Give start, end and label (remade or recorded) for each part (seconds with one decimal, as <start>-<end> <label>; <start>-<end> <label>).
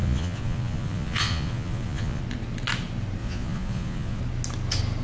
0.0-2.2 remade; 2.2-3.2 recorded; 3.2-4.2 remade; 4.2-5.0 recorded